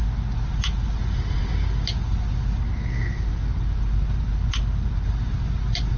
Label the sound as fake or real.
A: real